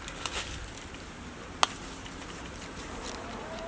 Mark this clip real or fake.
real